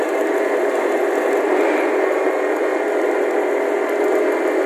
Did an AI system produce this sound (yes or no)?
no